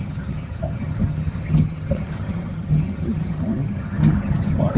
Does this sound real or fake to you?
fake